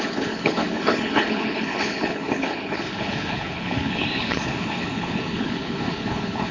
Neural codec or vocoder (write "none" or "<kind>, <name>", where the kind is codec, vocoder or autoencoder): codec, HILCodec